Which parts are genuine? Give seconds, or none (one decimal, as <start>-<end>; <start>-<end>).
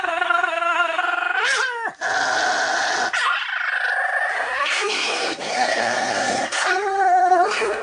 1.0-4.3